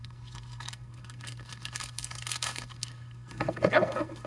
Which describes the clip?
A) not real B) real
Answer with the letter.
A